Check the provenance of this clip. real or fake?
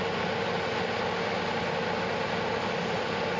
real